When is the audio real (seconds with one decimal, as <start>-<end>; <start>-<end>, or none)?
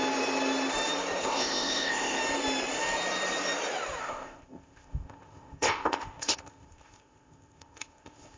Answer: 0.0-1.2; 2.2-4.0